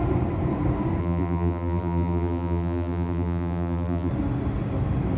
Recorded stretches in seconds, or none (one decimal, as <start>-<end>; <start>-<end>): 0.0-1.0; 4.1-5.2